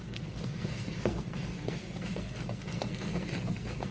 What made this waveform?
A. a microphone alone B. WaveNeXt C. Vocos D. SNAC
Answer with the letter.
D